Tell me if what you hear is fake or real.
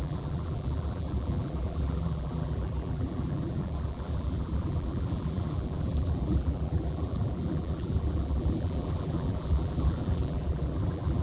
fake